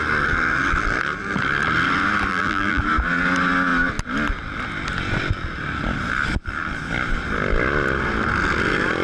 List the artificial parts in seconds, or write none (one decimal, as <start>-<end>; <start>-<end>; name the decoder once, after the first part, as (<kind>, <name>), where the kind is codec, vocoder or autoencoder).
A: 2.3-2.8 (vocoder, BigVGAN v2)